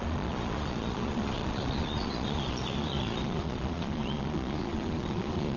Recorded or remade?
remade